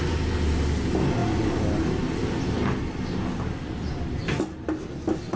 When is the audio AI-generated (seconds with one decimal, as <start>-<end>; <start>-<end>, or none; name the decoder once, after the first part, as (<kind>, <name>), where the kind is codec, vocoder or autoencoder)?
none